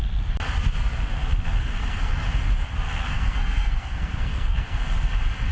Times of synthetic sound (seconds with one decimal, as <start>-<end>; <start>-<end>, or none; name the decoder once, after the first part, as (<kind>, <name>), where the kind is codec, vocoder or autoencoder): 1.6-2.1 (codec, SNAC); 3.1-4.8

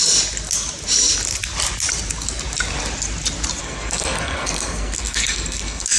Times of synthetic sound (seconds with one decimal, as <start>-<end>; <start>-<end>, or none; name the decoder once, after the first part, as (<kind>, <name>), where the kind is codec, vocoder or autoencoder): 3.6-6.0 (codec, SNAC)